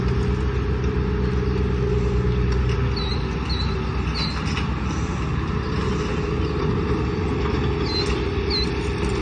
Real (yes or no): yes